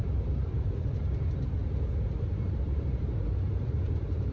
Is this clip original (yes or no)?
no